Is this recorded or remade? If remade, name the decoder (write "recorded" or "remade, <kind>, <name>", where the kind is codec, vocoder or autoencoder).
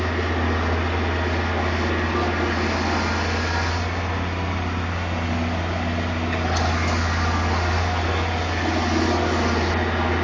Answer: recorded